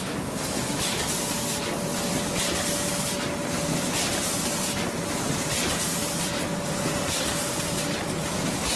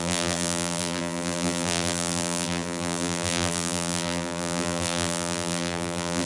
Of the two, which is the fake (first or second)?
second